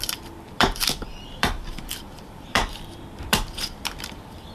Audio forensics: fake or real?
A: fake